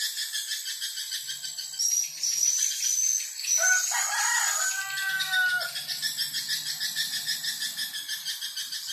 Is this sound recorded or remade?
recorded